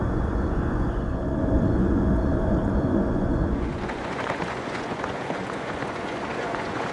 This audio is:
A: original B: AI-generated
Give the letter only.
B